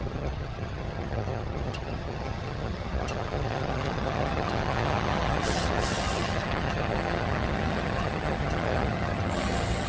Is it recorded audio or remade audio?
remade